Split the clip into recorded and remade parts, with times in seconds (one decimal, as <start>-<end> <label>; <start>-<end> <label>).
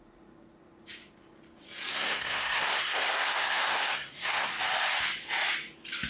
0.0-1.9 recorded; 1.9-4.5 remade; 4.5-6.1 recorded